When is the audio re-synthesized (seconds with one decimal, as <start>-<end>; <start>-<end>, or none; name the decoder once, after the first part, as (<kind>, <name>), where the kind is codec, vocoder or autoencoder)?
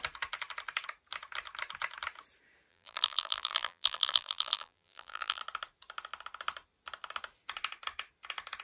2.7-5.4 (vocoder, BigVGAN v2)